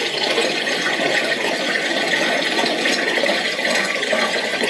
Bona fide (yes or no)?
no